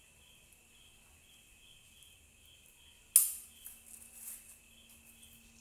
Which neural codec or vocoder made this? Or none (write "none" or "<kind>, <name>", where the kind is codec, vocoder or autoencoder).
none